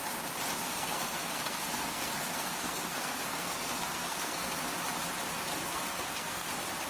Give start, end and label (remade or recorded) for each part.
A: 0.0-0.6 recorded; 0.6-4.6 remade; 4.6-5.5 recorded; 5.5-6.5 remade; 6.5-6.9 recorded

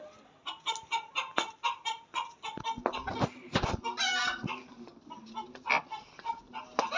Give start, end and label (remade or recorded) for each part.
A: 0.0-7.0 recorded

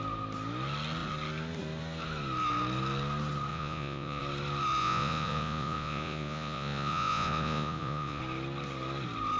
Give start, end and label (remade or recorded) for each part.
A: 0.0-3.5 recorded; 3.5-4.2 remade; 4.2-4.8 recorded; 4.8-8.2 remade; 8.2-9.4 recorded

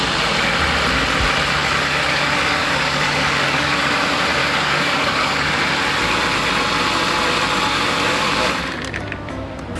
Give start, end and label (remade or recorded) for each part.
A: 0.0-1.6 recorded; 1.6-3.8 remade; 3.8-4.4 recorded; 4.4-5.5 remade; 5.5-7.7 recorded; 7.7-8.5 remade; 8.5-9.8 recorded

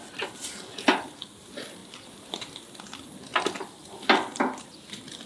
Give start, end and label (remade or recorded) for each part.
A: 0.0-1.8 recorded; 1.8-2.5 remade; 2.5-5.3 recorded